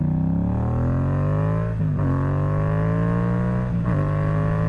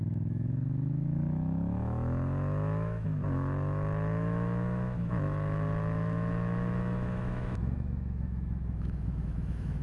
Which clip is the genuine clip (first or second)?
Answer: first